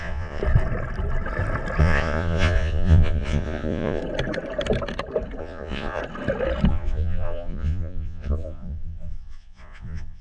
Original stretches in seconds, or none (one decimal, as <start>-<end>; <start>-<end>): 0.4-1.8; 4.0-5.4; 6.0-6.7

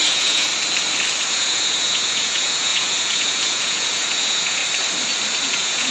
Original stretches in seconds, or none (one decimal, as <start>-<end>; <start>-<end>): 0.5-1.3; 4.6-5.4

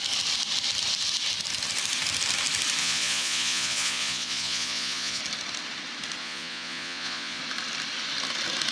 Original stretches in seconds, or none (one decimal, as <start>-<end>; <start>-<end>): 0.0-2.8; 5.2-6.2; 7.4-8.7

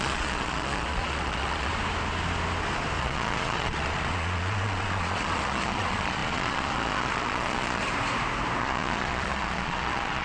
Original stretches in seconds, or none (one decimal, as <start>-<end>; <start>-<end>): 1.7-3.0; 7.8-8.6

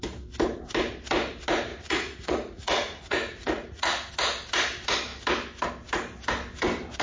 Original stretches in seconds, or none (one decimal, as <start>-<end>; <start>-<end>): 0.0-1.7; 4.1-7.0

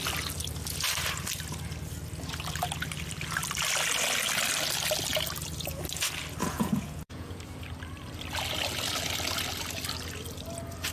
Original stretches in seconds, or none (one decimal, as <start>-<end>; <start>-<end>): 0.0-6.4; 7.4-10.9